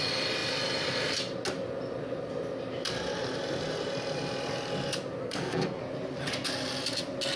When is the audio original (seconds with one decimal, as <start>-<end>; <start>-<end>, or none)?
0.0-5.2; 5.8-7.4